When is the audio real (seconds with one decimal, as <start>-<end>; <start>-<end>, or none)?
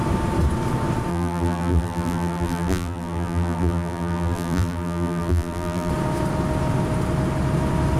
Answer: 0.0-1.1; 5.9-8.0